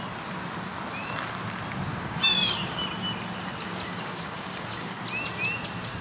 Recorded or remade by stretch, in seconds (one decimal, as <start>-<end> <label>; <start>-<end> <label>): 0.0-1.9 recorded; 1.9-2.8 remade; 2.8-3.9 recorded; 3.9-5.0 remade; 5.0-6.0 recorded